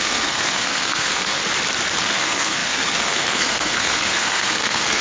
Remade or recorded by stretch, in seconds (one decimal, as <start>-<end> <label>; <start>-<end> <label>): 0.0-1.4 remade; 1.4-2.0 recorded; 2.0-5.0 remade